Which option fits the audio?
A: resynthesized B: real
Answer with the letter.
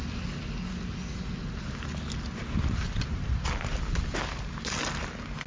B